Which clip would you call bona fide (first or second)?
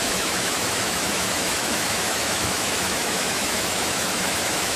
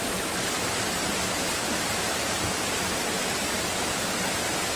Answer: second